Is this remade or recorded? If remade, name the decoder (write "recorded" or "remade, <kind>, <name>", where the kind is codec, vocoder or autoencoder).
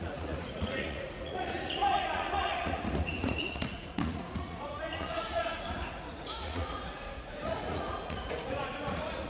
remade, vocoder, Vocos